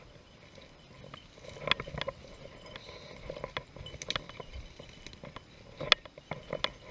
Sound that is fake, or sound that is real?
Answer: real